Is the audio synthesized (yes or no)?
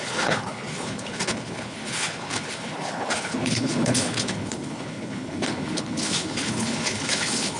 yes